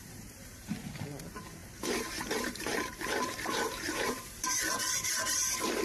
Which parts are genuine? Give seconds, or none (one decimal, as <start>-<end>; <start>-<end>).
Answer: none